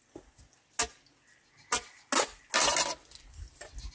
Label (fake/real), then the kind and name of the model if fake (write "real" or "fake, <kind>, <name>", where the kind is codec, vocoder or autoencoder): real